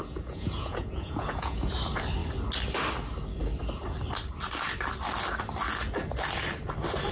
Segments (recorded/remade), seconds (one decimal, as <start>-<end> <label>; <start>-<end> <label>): 0.0-1.7 remade; 1.7-7.1 recorded